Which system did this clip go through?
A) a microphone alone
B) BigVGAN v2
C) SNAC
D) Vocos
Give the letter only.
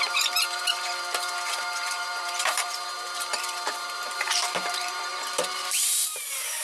B